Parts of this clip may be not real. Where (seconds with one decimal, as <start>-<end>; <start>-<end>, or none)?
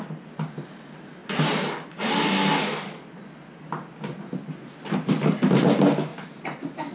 none